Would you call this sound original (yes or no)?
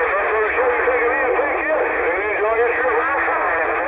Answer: yes